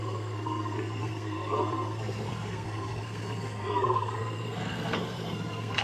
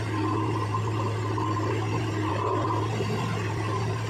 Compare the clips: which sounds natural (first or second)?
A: second